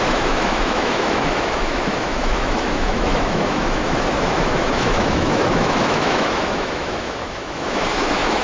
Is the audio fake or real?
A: fake